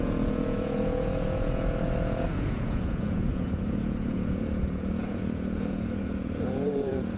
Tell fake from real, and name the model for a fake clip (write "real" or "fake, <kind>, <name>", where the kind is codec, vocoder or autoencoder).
fake, vocoder, Vocos